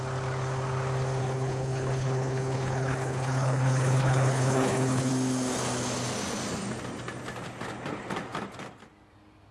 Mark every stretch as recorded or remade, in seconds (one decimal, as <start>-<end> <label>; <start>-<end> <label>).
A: 0.0-1.2 recorded; 1.2-5.1 remade; 5.1-9.5 recorded